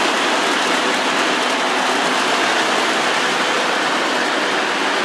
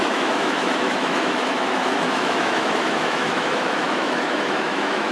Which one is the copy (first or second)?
second